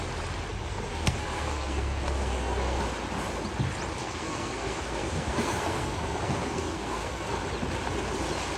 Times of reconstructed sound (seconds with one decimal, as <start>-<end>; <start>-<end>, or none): 0.7-2.8; 4.0-7.4